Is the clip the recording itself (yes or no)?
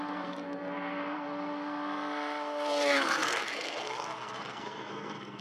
no